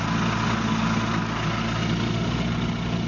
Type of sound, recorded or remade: recorded